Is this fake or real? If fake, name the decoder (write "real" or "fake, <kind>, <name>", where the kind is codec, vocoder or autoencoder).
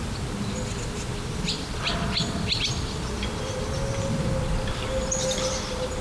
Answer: real